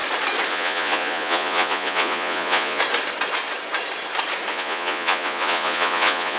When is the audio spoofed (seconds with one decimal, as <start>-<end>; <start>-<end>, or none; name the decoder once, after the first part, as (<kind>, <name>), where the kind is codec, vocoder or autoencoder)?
0.5-2.8 (vocoder, Vocos); 4.5-6.4